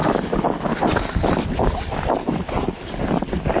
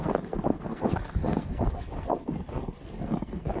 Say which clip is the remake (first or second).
second